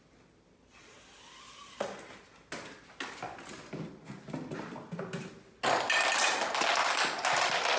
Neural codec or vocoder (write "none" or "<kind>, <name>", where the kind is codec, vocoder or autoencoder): none